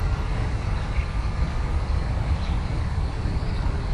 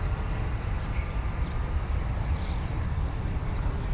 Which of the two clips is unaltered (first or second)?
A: second